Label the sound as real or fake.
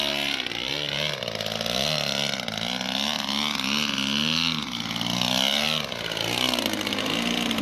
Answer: real